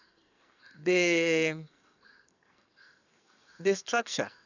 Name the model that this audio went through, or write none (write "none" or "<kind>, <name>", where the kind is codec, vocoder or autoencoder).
codec, SNAC